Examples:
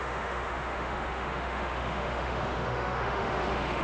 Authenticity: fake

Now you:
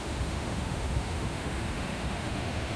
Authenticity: fake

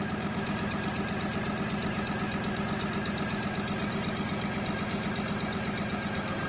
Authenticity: real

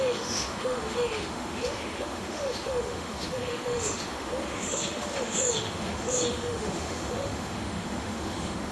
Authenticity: fake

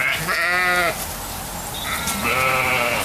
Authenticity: real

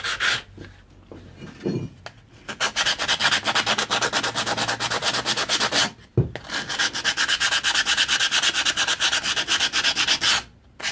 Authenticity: real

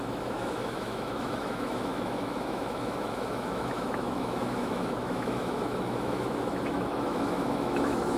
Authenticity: fake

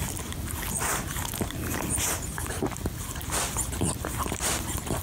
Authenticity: real